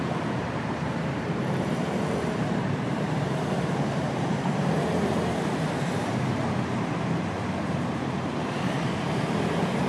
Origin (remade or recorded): remade